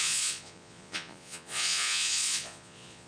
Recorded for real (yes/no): no